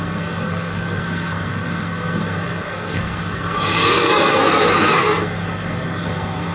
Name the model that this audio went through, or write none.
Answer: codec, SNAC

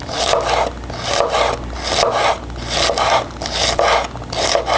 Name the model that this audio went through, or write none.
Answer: none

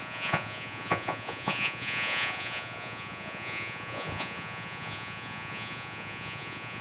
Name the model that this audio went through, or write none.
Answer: vocoder, Vocos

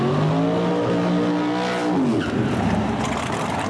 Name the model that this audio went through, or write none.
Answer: none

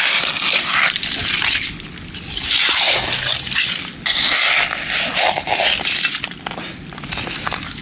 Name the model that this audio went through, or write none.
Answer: none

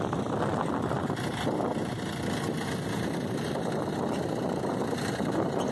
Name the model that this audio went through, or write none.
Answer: none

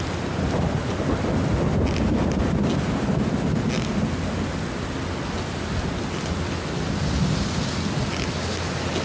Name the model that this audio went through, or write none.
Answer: none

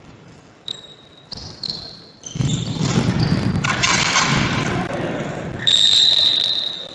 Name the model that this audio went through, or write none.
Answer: vocoder, BigVGAN v2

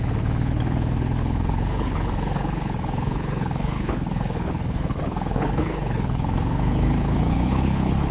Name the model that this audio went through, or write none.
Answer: codec, HILCodec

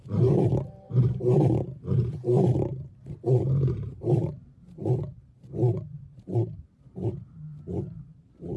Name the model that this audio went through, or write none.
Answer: vocoder, BigVGAN v2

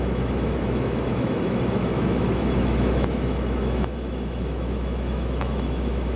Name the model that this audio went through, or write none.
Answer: autoencoder, DAC-VAE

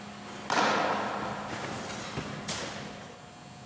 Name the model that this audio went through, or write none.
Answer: none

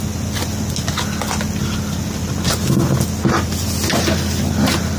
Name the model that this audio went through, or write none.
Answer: none